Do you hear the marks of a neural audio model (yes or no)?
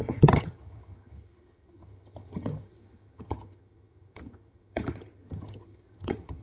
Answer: yes